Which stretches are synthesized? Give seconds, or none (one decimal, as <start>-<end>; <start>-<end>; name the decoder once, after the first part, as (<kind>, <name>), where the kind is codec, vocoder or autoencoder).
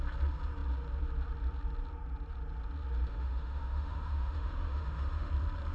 3.1-5.3 (autoencoder, DAC-VAE)